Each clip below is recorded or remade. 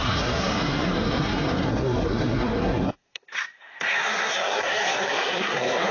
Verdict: remade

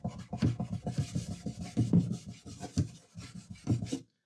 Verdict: recorded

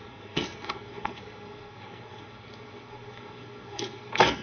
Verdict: remade